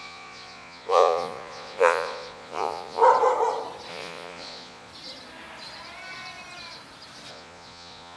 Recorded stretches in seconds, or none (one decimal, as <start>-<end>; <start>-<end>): 3.0-3.9; 4.9-7.3